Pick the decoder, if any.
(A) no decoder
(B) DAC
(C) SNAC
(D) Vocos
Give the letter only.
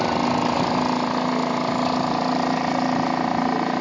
A